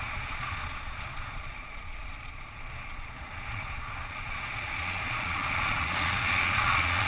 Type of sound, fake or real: fake